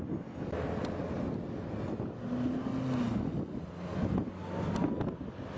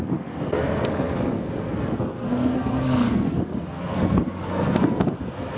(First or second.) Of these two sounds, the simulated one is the second